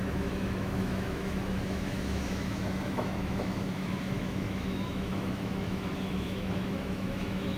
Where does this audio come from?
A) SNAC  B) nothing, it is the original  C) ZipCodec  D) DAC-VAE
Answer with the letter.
D